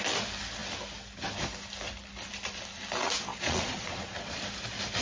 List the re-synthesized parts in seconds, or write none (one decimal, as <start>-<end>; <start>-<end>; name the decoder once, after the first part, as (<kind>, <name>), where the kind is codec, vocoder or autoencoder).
3.3-4.4 (vocoder, Vocos)